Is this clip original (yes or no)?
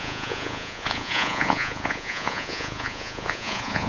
no